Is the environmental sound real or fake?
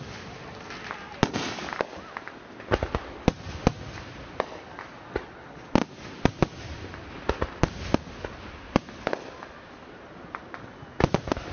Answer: real